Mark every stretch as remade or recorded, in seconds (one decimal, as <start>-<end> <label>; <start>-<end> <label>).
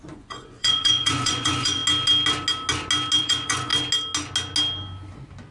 0.0-1.8 remade; 1.8-3.2 recorded; 3.2-3.7 remade; 3.7-5.5 recorded